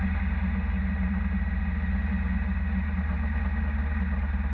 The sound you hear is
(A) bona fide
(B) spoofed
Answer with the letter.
A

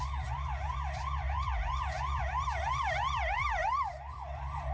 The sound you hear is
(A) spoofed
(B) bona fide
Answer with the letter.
B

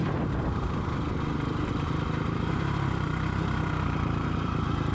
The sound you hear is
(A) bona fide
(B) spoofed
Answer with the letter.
B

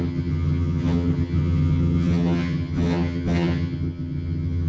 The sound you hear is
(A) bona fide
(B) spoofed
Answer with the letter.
B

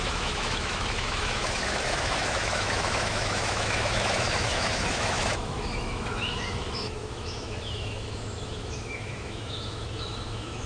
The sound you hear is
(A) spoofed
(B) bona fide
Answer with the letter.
A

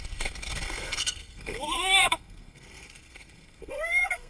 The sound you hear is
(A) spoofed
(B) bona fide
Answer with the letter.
A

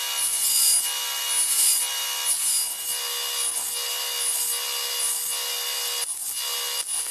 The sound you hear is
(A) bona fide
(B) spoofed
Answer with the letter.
A